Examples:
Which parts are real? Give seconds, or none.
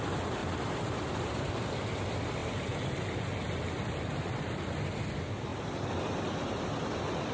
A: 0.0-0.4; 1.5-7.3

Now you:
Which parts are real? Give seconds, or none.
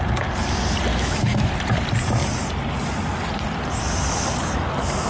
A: 0.0-0.9; 1.5-5.1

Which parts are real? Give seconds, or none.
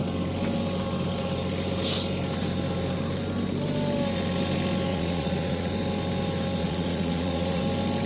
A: 0.0-4.9; 5.7-6.6; 7.6-8.1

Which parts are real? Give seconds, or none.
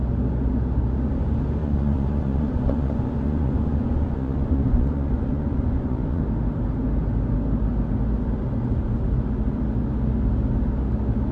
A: 0.0-1.6; 6.2-11.3